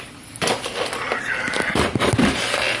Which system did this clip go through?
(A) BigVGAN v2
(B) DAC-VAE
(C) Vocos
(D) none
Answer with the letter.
D